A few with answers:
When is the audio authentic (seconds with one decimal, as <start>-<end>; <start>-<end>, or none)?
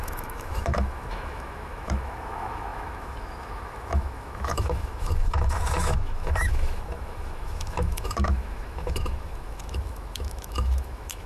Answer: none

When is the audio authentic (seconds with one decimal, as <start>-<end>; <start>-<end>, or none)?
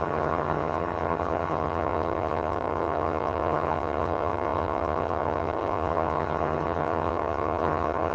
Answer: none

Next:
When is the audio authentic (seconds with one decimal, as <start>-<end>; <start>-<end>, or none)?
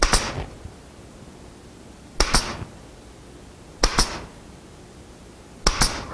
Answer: 0.0-6.1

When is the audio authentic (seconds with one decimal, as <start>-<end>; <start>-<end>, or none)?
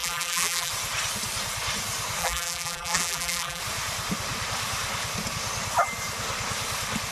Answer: 0.7-2.2; 3.6-7.1